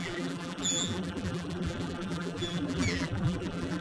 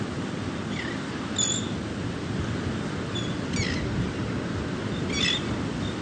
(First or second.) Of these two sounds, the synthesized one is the first